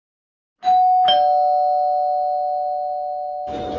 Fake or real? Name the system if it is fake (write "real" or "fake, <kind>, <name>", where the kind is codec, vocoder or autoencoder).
real